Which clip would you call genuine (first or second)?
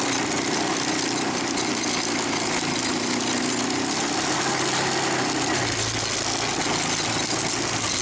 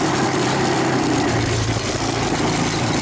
first